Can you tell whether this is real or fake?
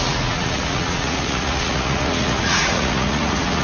fake